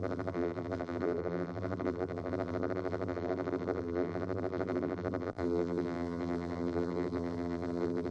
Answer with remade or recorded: remade